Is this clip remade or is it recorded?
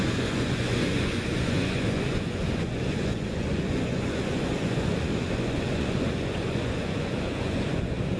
remade